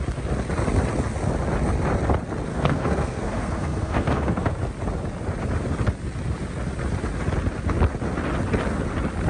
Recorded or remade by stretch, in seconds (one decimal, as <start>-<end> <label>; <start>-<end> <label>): 0.0-2.5 recorded; 2.5-4.6 remade; 4.6-9.3 recorded